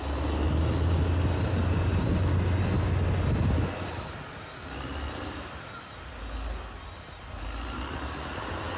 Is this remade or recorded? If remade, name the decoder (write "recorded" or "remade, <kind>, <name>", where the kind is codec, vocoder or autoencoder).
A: recorded